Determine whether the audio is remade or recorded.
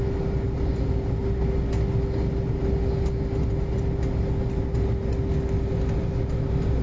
recorded